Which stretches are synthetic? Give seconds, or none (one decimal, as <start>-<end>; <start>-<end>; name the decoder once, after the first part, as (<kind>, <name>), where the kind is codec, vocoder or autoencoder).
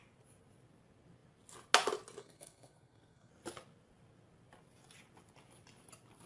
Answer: 2.2-3.3 (codec, SNAC)